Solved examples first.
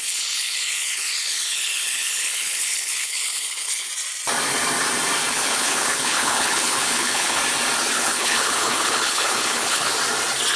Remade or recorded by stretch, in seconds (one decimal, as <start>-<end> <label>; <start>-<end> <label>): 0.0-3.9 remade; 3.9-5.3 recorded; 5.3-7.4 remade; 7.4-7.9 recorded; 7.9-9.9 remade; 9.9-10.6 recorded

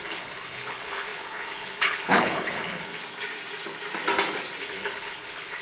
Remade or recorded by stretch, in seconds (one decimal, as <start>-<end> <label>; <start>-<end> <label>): 0.0-2.9 remade; 2.9-4.6 recorded; 4.6-5.6 remade

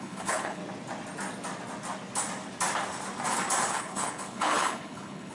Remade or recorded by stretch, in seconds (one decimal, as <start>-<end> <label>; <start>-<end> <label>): 0.0-0.6 remade; 0.6-3.7 recorded; 3.7-5.3 remade